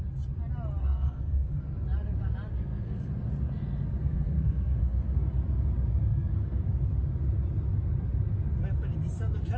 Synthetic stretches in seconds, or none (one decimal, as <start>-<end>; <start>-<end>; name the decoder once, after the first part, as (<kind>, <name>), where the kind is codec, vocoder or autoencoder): 0.8-1.6 (codec, SNAC); 2.5-3.1; 4.0-5.3; 5.9-6.6